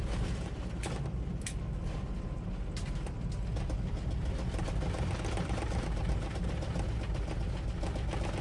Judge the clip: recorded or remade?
recorded